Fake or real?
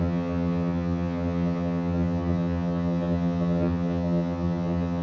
fake